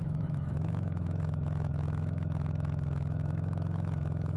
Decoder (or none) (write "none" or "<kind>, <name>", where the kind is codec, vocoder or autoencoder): autoencoder, DAC-VAE